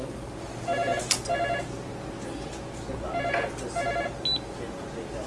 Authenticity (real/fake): real